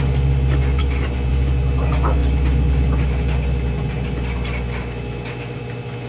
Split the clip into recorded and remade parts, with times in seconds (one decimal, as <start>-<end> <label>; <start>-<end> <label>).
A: 0.0-6.1 recorded